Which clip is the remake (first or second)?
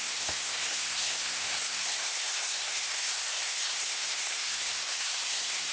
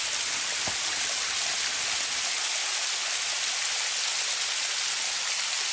first